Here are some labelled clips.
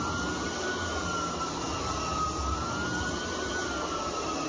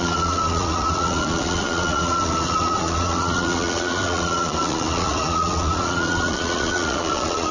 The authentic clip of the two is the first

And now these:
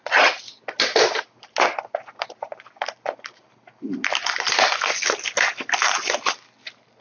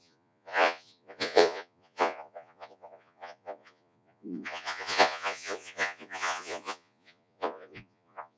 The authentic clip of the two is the first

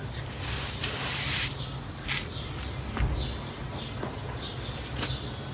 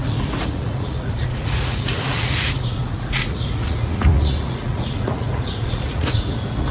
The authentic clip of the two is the first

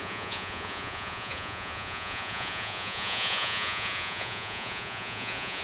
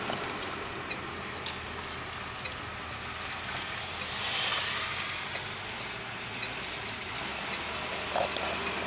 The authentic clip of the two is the second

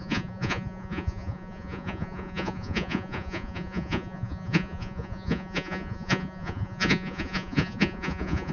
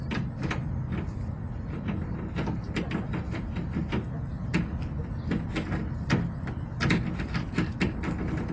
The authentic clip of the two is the second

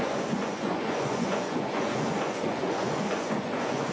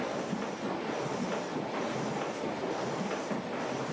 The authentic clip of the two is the second